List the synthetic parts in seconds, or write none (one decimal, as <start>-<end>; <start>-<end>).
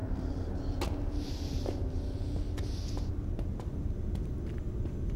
none